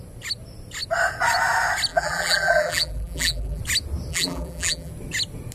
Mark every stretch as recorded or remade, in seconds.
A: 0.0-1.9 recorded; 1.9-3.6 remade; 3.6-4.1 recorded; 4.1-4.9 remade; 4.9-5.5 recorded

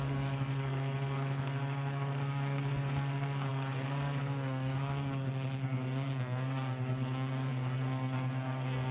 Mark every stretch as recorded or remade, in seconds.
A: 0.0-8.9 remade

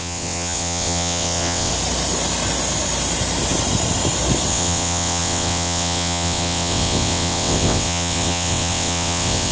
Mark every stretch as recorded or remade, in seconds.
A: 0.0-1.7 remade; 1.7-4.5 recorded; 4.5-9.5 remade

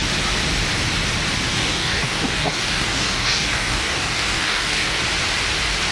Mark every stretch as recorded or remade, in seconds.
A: 0.0-1.5 recorded; 1.5-5.0 remade; 5.0-5.9 recorded

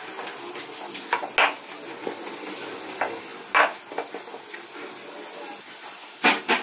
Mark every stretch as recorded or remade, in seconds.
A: 0.0-6.6 recorded

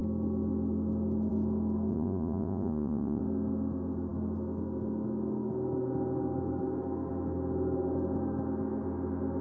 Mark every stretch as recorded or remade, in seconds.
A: 0.0-1.9 recorded; 1.9-3.2 remade; 3.2-9.4 recorded

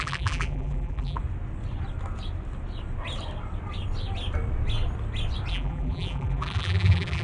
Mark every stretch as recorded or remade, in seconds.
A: 0.0-1.2 remade; 1.2-5.5 recorded; 5.5-7.2 remade